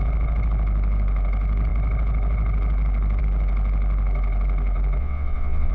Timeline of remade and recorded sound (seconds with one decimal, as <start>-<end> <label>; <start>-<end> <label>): 0.0-5.0 recorded; 5.0-5.7 remade